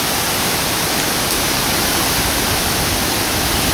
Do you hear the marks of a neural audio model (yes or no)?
no